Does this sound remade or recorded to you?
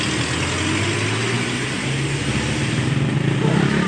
recorded